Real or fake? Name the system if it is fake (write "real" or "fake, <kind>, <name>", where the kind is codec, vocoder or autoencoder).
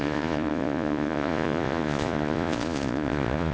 fake, vocoder, Vocos